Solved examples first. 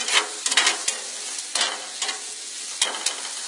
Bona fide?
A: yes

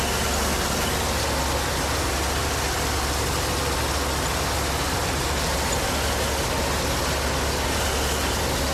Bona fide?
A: yes